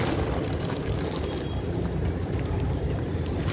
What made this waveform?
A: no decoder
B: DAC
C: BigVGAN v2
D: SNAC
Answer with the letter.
A